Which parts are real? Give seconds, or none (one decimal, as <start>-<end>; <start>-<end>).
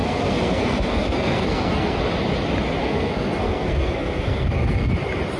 2.0-2.8; 4.9-5.4